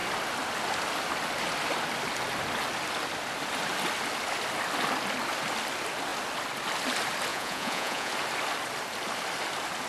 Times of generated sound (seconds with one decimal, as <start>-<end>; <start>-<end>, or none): 7.3-8.1